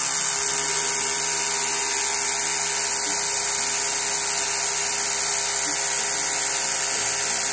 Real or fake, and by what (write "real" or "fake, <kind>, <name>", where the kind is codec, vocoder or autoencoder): real